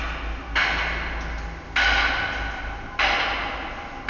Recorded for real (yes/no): yes